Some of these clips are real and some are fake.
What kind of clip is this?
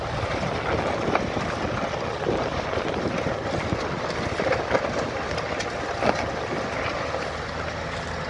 real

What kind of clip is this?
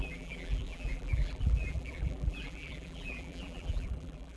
fake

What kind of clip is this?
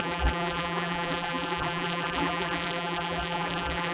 fake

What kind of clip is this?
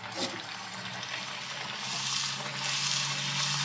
real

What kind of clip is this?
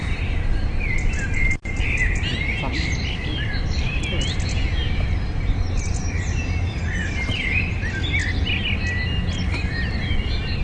real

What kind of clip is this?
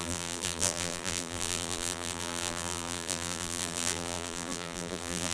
fake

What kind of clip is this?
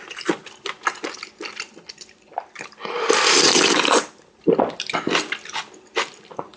real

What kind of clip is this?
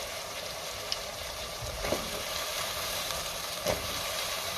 fake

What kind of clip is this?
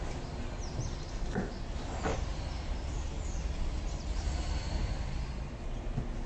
real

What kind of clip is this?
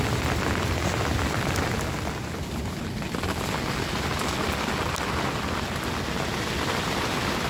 real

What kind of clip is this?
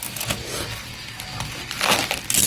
real